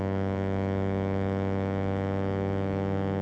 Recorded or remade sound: remade